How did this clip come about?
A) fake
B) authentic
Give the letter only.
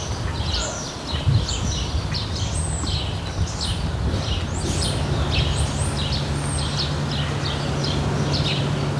B